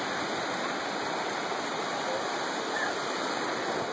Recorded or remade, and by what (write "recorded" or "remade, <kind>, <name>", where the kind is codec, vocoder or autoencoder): recorded